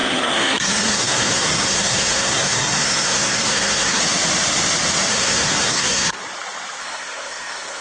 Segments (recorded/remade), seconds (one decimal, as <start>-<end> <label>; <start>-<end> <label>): 0.0-4.0 remade; 4.0-5.1 recorded; 5.1-6.2 remade; 6.2-6.8 recorded; 6.8-7.8 remade